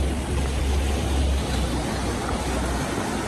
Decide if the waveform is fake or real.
real